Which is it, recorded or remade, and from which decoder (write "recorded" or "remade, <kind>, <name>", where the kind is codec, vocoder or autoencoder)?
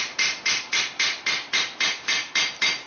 remade, vocoder, BigVGAN v2